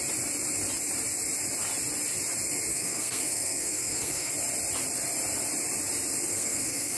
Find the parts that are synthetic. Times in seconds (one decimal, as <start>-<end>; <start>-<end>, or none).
2.7-4.3; 6.3-7.0